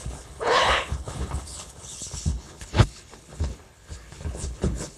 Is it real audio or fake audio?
fake